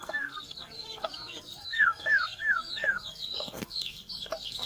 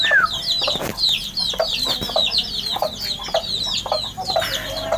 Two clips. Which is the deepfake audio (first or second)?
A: first